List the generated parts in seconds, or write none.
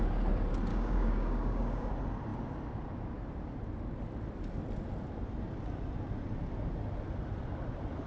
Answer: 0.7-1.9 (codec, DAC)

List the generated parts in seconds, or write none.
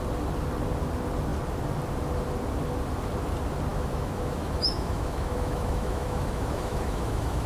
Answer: 3.7-7.5 (autoencoder, DAC-VAE)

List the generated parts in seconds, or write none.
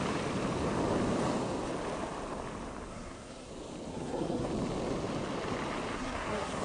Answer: 2.9-3.5 (codec, SNAC); 3.9-4.5; 5.9-6.6